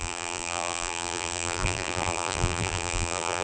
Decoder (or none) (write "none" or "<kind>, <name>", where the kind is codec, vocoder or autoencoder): vocoder, BigVGAN v2